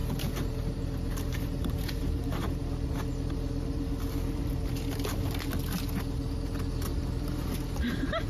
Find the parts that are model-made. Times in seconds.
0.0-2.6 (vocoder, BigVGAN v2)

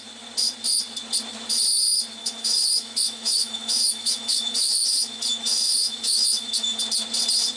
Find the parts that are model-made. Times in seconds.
2.2-6.8 (autoencoder, DAC-VAE)

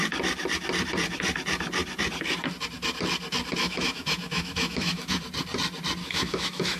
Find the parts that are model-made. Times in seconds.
3.6-5.2 (autoencoder, DAC-VAE); 6.0-6.8

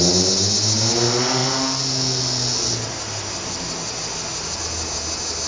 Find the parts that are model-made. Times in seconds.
none

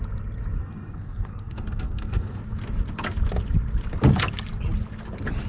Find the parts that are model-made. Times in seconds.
0.6-2.4 (codec, SNAC)

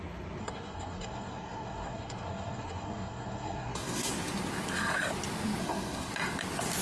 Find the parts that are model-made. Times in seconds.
0.4-4.1 (codec, SNAC); 5.6-6.1